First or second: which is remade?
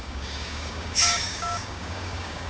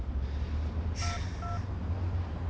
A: first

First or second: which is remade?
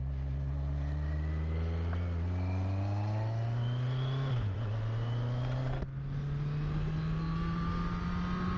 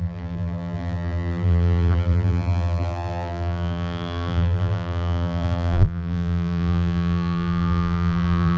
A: second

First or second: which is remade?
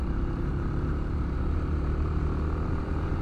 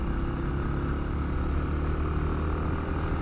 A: first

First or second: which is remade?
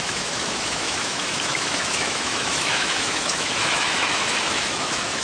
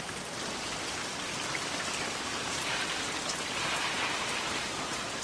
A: first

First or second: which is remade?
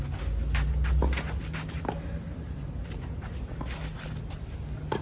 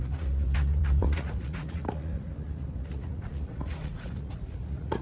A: second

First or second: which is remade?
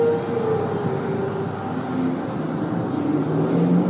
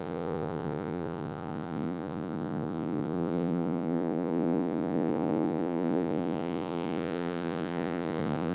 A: second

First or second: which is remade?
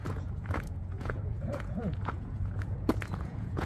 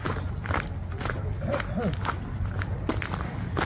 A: first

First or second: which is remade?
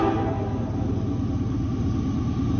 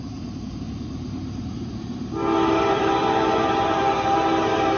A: second